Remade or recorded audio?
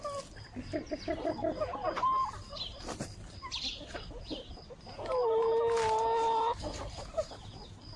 recorded